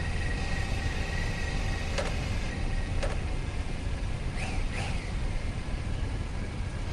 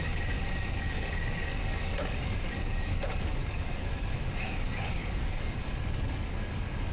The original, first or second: first